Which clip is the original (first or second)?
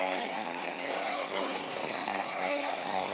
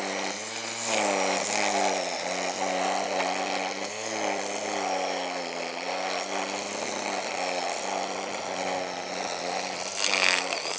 second